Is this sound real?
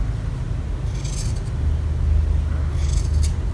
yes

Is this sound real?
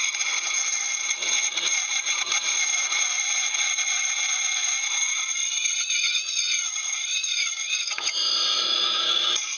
no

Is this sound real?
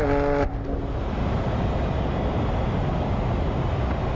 yes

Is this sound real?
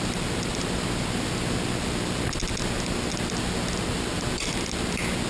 yes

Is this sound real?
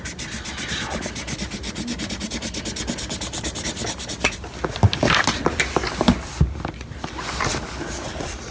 yes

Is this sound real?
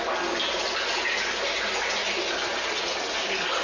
yes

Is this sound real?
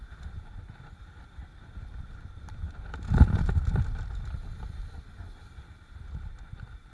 yes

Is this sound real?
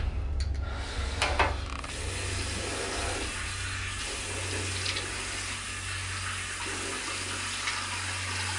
yes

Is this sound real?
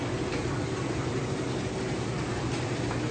yes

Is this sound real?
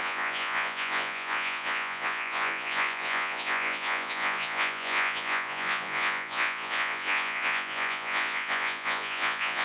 no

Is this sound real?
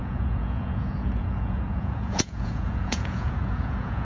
no